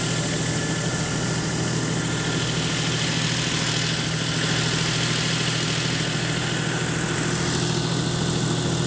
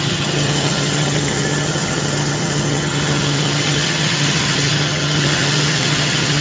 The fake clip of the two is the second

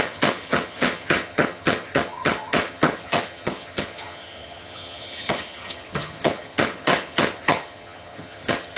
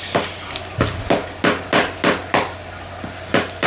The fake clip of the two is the first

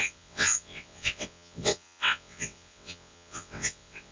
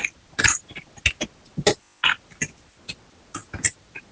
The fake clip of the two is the first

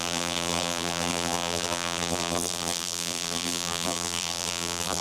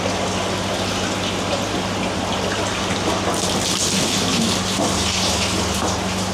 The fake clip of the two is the first